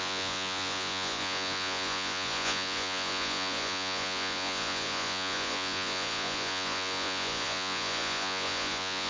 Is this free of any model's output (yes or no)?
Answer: no